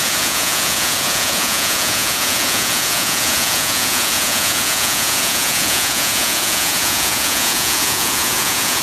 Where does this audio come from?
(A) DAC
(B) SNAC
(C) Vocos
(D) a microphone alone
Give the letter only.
C